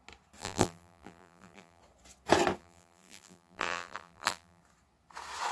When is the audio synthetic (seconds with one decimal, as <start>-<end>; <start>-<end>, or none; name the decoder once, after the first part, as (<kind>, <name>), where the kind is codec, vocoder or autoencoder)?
0.4-1.8 (vocoder, BigVGAN v2); 2.6-4.6